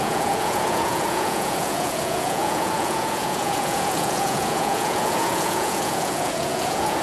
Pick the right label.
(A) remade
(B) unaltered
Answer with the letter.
A